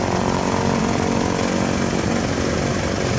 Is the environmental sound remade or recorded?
recorded